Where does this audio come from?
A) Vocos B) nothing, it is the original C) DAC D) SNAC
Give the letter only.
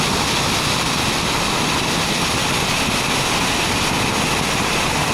B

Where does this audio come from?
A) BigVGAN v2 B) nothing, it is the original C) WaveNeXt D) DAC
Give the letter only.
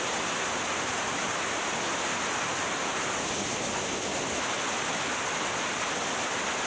B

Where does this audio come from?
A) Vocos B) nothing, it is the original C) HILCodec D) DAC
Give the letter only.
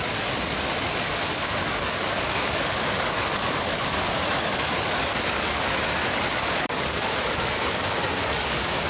D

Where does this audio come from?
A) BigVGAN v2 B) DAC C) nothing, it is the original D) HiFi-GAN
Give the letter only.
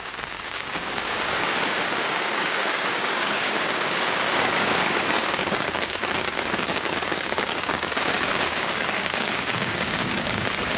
B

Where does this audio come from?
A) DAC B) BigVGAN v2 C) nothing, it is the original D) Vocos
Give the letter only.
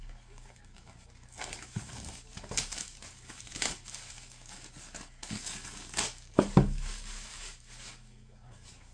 A